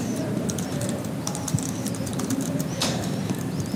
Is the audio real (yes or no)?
no